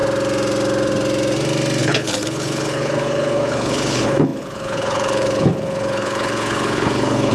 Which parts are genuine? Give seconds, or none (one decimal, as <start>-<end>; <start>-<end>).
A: 0.0-1.8